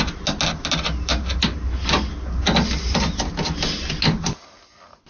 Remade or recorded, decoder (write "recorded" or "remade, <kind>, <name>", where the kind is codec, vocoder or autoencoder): recorded